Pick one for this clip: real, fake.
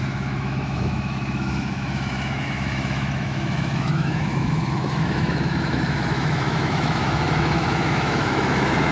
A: fake